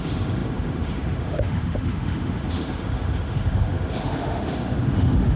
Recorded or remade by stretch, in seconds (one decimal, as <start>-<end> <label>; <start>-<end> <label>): 0.0-5.4 remade